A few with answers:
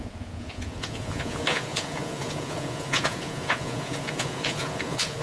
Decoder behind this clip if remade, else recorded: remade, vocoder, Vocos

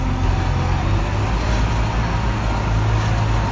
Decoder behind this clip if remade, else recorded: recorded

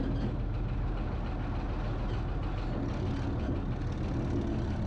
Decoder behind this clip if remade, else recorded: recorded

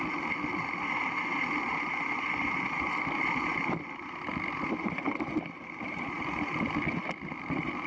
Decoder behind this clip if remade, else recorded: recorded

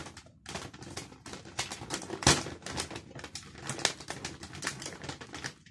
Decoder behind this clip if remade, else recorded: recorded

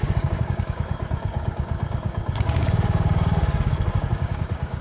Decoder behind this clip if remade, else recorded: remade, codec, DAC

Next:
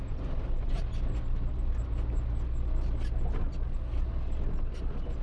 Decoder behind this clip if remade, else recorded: recorded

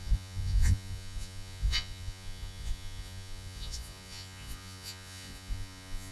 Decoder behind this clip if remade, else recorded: remade, vocoder, Vocos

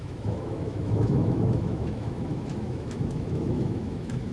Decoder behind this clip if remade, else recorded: remade, autoencoder, DAC-VAE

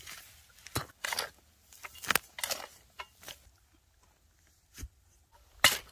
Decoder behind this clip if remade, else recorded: recorded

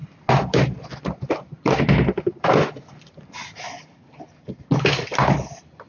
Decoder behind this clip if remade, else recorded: recorded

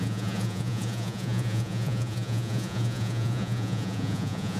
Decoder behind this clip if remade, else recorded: remade, vocoder, Vocos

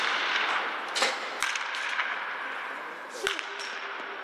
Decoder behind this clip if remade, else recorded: recorded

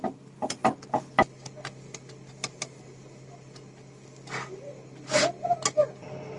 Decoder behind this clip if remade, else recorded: recorded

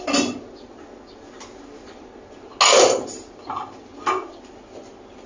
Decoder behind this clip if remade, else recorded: recorded